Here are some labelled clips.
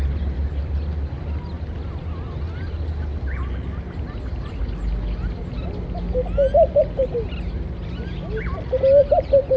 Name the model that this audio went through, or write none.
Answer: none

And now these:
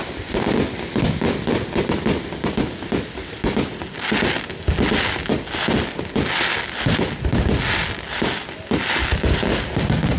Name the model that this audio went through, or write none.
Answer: none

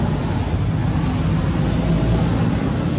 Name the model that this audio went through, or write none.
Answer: none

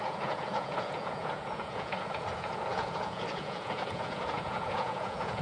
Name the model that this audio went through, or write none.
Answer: vocoder, Vocos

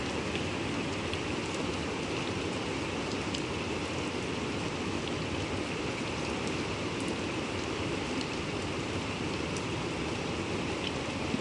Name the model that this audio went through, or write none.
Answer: none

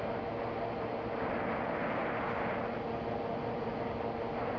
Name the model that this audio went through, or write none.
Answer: none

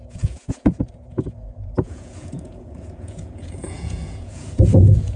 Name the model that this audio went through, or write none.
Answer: vocoder, Vocos